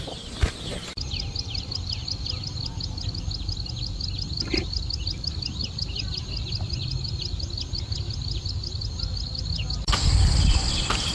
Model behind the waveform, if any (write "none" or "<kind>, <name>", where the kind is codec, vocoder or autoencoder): none